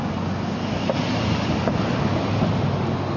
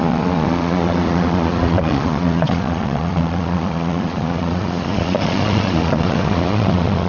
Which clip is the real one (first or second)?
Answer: first